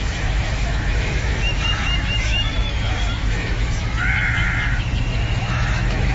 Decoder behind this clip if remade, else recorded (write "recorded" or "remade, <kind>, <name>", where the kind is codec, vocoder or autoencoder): remade, autoencoder, DAC-VAE